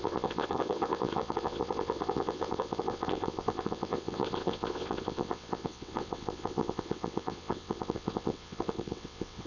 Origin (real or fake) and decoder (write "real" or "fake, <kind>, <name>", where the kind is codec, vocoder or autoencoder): fake, vocoder, WaveNeXt